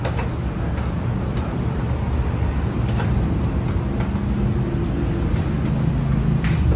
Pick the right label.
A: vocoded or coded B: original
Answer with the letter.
B